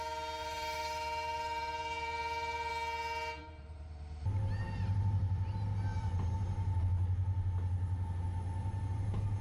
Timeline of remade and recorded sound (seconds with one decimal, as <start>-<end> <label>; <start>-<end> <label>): 0.0-0.4 recorded; 0.4-2.7 remade; 2.7-3.4 recorded; 3.4-3.9 remade; 3.9-5.9 recorded; 5.9-6.8 remade; 6.8-9.4 recorded